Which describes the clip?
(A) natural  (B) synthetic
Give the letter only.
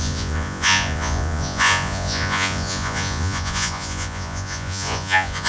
B